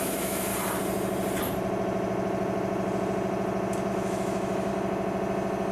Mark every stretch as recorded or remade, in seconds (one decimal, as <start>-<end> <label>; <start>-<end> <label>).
0.0-0.5 remade; 0.5-3.9 recorded; 3.9-4.7 remade; 4.7-5.7 recorded